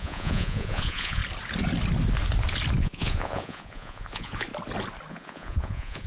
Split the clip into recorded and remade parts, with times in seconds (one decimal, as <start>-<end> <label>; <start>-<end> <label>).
0.0-1.2 remade; 1.2-2.8 recorded; 2.8-4.5 remade; 4.5-5.1 recorded; 5.1-6.1 remade